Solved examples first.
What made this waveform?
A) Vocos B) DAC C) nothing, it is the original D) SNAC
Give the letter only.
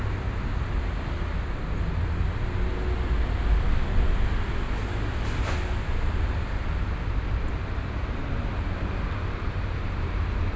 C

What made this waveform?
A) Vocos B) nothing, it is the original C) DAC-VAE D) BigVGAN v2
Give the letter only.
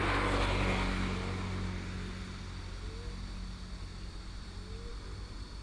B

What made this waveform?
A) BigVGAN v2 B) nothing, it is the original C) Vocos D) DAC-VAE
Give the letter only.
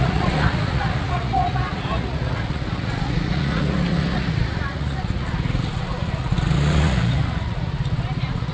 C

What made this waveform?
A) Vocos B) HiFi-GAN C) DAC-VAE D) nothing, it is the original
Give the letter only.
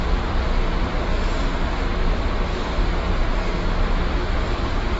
D